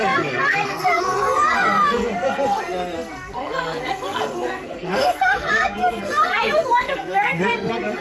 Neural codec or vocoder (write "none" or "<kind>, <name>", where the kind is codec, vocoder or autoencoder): codec, SNAC